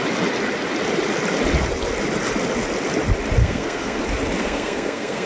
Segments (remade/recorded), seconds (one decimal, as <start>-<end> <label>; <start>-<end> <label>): 0.0-3.4 recorded; 3.4-4.0 remade; 4.0-4.4 recorded; 4.4-5.3 remade